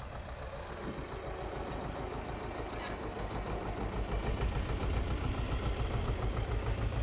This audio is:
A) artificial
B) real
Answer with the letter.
B